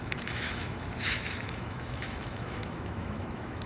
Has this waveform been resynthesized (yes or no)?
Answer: yes